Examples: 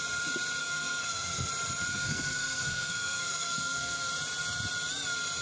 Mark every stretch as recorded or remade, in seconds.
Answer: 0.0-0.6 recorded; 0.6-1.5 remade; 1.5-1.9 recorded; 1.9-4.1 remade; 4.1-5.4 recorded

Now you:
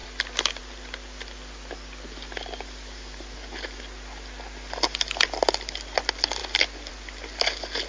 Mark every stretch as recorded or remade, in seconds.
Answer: 0.0-7.9 recorded

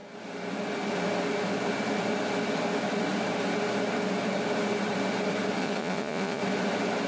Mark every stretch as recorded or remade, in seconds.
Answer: 0.0-5.6 recorded; 5.6-6.4 remade; 6.4-7.1 recorded

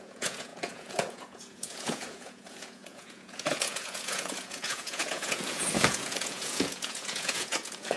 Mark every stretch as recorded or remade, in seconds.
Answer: 0.0-8.0 remade

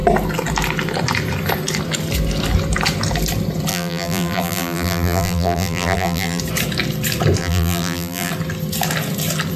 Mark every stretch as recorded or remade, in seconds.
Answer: 0.0-3.7 recorded; 3.7-6.4 remade; 6.4-7.4 recorded; 7.4-8.3 remade; 8.3-9.6 recorded

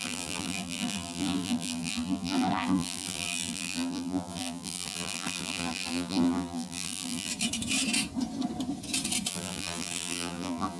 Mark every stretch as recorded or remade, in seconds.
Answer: 0.0-7.3 remade; 7.3-9.3 recorded; 9.3-10.8 remade

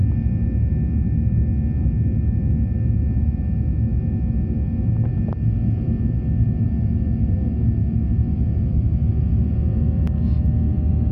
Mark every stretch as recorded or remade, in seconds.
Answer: 0.0-11.1 recorded

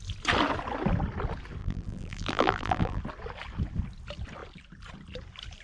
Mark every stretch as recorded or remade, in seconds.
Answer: 0.0-1.6 recorded; 1.6-3.0 remade; 3.0-5.6 recorded